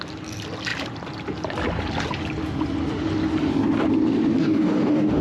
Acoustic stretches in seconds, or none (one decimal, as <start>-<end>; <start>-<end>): 0.0-4.4